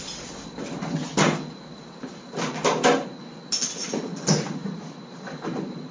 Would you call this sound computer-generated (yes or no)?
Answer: no